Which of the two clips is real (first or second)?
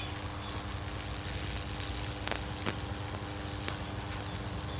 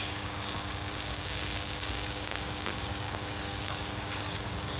first